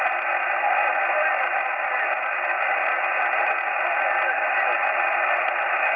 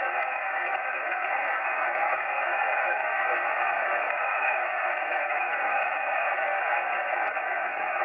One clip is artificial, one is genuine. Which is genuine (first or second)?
first